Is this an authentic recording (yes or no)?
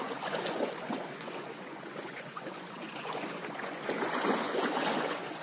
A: no